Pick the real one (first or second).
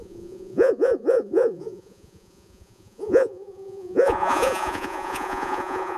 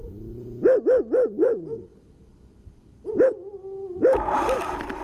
second